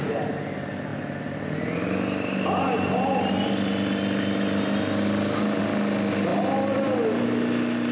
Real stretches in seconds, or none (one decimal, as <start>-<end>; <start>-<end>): 0.0-7.9